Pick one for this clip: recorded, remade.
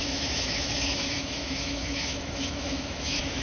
remade